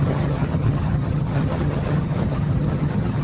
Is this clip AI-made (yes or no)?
yes